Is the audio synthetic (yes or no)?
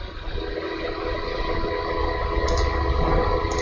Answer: no